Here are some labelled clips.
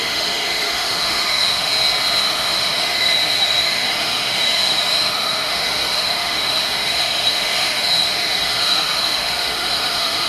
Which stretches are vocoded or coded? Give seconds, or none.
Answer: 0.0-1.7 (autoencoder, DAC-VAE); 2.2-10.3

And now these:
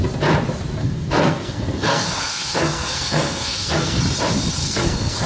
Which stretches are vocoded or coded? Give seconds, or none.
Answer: 0.8-4.0 (codec, SNAC); 4.6-5.3

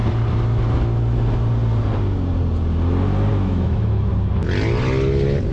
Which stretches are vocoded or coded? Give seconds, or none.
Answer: 3.3-4.1 (autoencoder, DAC-VAE)